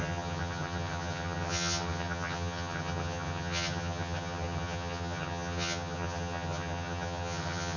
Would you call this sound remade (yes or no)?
yes